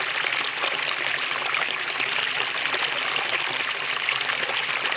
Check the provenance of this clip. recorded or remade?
recorded